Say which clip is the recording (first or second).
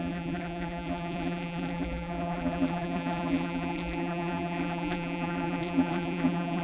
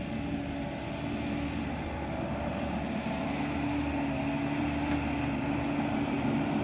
second